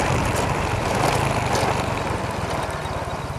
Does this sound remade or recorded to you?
recorded